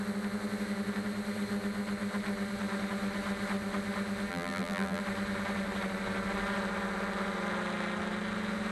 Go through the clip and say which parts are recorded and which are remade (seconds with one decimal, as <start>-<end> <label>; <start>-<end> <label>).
0.0-4.3 recorded; 4.3-5.0 remade; 5.0-8.7 recorded